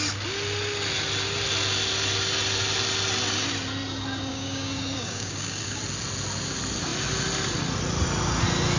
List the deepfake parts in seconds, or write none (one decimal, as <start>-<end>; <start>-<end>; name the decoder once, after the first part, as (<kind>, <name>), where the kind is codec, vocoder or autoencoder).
4.3-5.8 (codec, DAC)